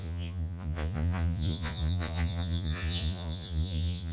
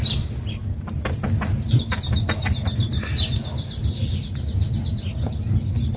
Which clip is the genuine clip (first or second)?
second